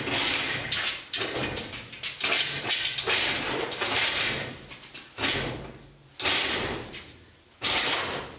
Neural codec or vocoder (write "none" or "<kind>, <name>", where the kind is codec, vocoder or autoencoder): vocoder, BigVGAN v2